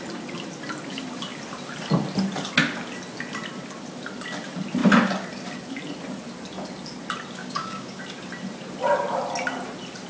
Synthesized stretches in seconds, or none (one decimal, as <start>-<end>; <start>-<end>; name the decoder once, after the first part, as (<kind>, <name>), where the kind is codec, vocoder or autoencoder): 7.4-8.0 (codec, DAC)